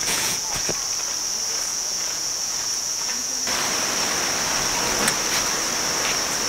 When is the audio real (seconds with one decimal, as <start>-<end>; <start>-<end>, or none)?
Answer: 0.7-1.7; 3.4-6.5